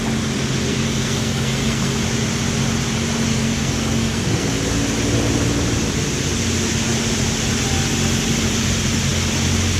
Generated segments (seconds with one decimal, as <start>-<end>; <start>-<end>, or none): 0.7-2.0; 3.3-4.5

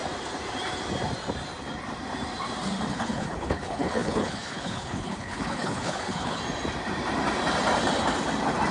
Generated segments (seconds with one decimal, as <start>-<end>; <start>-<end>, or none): 2.9-6.4